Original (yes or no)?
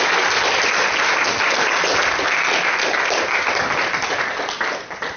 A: yes